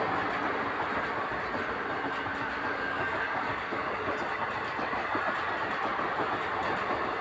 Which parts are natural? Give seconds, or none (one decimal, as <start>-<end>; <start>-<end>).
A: 0.0-2.4; 4.1-7.2